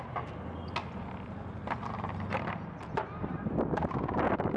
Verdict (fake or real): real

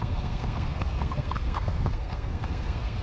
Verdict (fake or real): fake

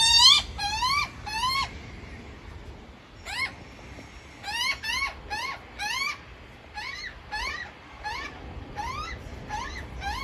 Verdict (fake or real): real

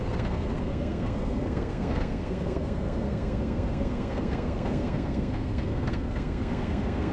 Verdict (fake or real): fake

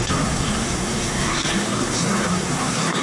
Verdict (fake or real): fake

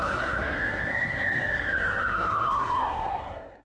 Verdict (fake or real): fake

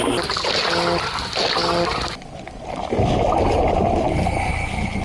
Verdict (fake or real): real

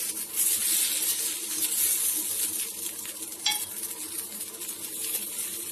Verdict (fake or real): real